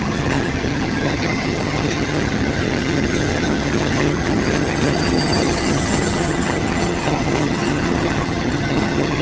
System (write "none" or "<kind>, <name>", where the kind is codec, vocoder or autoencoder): vocoder, HiFi-GAN